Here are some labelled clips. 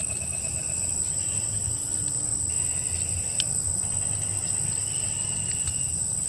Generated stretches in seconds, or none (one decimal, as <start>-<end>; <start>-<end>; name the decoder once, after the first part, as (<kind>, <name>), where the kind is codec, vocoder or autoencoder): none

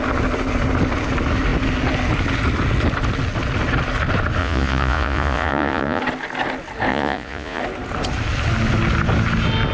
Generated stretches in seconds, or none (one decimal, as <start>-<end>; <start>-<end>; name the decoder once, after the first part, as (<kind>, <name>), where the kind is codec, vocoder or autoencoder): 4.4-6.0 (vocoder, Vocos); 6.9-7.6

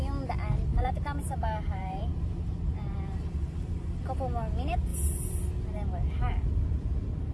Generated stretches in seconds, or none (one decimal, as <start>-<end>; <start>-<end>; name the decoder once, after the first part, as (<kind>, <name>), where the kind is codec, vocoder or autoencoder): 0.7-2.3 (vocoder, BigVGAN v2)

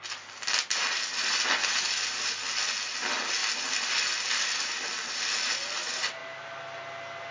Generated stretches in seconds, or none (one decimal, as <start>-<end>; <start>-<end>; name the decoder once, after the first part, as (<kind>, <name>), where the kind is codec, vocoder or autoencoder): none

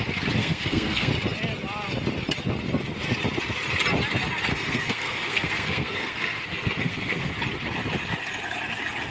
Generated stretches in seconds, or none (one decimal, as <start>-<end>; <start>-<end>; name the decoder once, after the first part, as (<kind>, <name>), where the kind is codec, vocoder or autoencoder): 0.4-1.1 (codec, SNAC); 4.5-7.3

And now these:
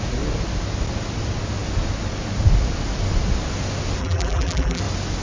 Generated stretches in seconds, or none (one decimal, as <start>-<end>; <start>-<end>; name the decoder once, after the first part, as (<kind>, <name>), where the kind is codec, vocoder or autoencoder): 4.0-4.8 (vocoder, BigVGAN v2)

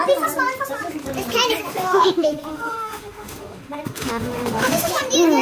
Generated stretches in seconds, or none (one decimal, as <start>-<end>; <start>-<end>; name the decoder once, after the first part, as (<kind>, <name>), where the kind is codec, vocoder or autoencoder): 1.7-4.9 (autoencoder, DAC-VAE)